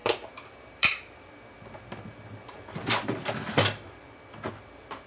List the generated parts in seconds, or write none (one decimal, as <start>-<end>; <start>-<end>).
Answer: 0.0-1.3